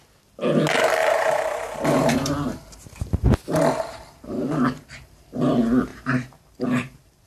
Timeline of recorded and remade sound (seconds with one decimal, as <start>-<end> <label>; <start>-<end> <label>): 0.0-1.0 recorded; 1.0-5.4 remade; 5.4-5.9 recorded; 5.9-7.3 remade